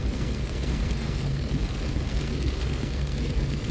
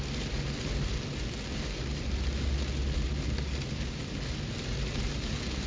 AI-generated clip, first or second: first